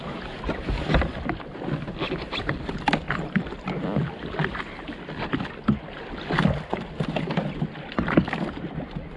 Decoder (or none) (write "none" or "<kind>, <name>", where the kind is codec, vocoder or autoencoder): none